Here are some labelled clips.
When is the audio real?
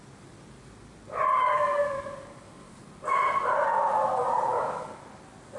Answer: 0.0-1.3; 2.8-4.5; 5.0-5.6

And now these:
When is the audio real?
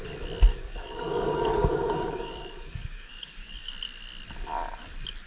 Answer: 0.0-0.5; 3.7-5.3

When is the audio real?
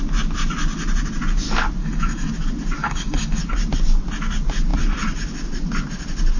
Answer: 0.0-1.8; 2.3-2.8; 3.4-6.4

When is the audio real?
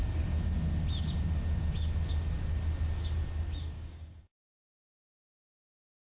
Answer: 0.0-3.6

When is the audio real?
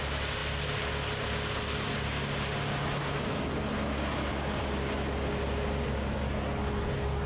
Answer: 0.0-7.3